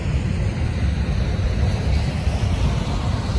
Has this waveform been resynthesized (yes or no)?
no